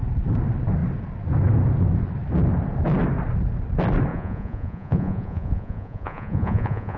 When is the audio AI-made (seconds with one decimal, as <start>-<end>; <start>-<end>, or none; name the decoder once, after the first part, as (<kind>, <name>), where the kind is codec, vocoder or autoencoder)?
4.1-7.0 (vocoder, Vocos)